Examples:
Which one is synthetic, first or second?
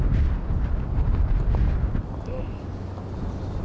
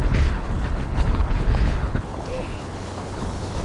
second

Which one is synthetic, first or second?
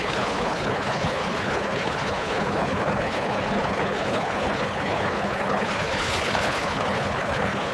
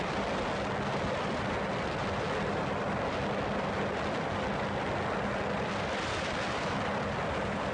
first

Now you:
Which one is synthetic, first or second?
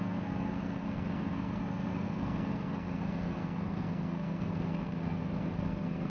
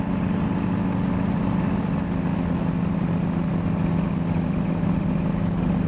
first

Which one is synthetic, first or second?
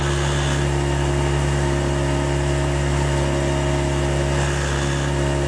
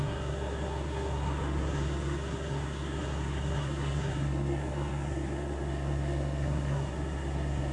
second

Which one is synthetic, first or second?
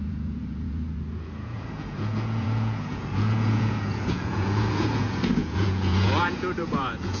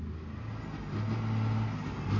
first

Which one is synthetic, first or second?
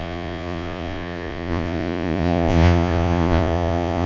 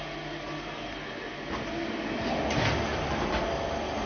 first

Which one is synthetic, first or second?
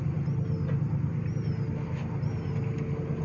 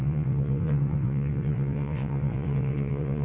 second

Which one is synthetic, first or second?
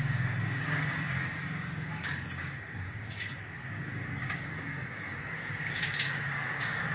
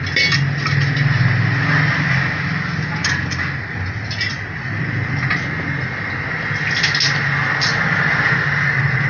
first